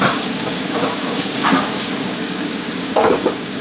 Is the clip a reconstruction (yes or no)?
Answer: yes